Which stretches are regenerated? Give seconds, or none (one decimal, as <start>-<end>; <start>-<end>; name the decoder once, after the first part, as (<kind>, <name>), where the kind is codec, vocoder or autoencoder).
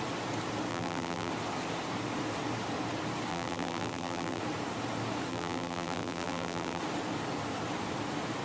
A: 0.7-1.3 (vocoder, BigVGAN v2); 3.3-4.4; 5.3-6.8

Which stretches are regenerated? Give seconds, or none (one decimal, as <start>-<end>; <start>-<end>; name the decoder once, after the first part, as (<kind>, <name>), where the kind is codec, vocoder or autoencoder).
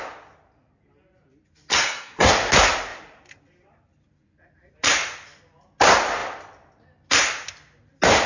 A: 1.7-2.3 (codec, SNAC)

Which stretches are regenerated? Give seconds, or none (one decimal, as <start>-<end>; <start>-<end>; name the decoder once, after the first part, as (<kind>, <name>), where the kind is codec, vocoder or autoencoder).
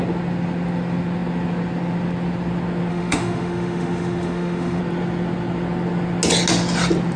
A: 2.9-4.8 (autoencoder, DAC-VAE)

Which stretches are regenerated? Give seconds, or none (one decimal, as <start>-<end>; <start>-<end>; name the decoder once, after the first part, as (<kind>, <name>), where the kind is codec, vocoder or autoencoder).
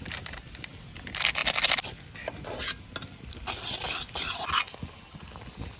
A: none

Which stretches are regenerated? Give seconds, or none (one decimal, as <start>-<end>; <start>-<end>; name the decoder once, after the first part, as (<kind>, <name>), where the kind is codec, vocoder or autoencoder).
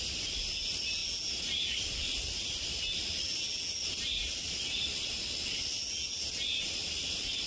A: none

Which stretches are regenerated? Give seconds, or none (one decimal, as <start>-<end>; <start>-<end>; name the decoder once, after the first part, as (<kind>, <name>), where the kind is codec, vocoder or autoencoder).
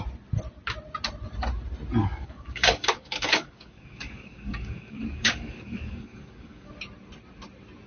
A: 2.0-6.7 (codec, DAC)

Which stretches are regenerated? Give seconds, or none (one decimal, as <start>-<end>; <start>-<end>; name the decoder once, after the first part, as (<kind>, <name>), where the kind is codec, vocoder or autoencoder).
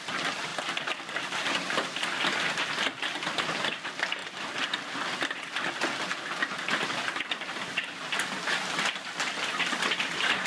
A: none